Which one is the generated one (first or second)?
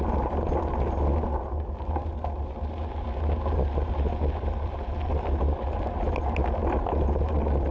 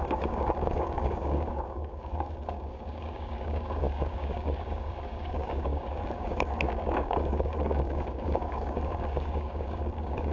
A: second